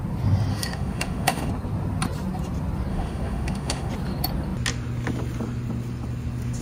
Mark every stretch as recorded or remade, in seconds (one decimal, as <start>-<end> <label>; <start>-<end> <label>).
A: 0.0-0.5 recorded; 0.5-1.5 remade; 1.5-2.9 recorded; 2.9-3.9 remade; 3.9-6.6 recorded